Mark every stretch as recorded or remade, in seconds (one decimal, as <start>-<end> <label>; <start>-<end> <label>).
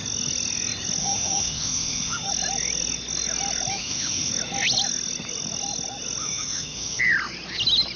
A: 0.0-1.0 recorded; 1.0-2.3 remade; 2.3-3.7 recorded; 3.7-4.3 remade; 4.3-6.2 recorded; 6.2-7.0 remade; 7.0-8.0 recorded